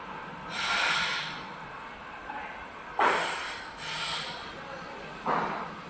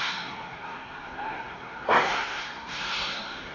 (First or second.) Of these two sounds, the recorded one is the first